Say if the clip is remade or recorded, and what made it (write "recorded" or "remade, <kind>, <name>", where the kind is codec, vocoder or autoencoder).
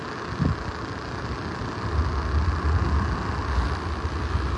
recorded